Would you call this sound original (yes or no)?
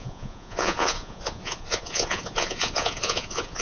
no